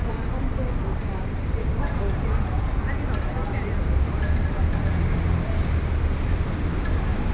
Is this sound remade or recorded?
recorded